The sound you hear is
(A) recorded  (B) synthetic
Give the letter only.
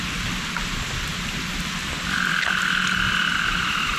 A